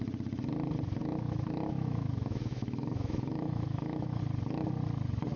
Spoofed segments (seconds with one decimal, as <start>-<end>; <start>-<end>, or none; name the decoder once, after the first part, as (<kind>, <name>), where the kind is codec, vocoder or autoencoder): 1.0-4.2 (autoencoder, DAC-VAE)